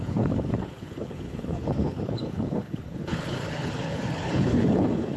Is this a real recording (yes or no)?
no